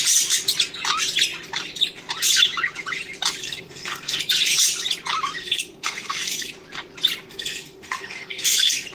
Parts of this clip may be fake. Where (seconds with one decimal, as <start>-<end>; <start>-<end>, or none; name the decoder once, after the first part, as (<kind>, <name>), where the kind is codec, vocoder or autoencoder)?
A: 3.4-4.2 (codec, SNAC); 5.4-6.5; 7.2-8.9